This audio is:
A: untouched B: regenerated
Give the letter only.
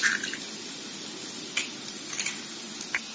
A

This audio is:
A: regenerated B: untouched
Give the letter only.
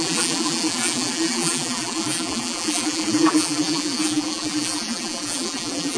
A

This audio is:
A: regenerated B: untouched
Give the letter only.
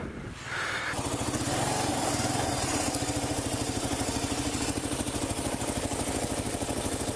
B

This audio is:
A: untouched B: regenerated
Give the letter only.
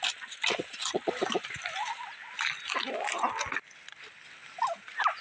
A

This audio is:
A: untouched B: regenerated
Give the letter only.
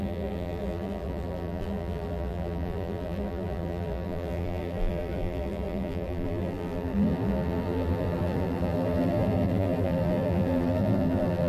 B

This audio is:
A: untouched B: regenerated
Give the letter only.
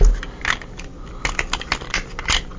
A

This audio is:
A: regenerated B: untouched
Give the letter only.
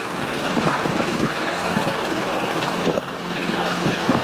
A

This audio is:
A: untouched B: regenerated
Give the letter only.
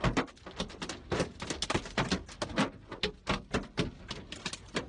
A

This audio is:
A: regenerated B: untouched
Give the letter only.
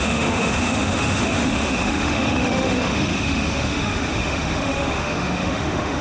A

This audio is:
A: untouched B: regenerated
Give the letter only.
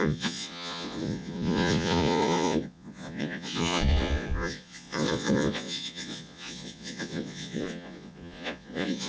B